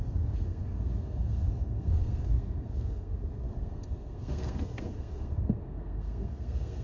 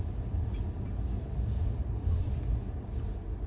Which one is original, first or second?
second